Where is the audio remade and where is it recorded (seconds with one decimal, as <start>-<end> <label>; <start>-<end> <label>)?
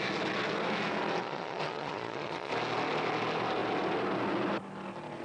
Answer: 0.0-1.2 recorded; 1.2-2.5 remade; 2.5-5.2 recorded